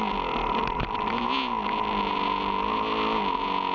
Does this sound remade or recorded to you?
recorded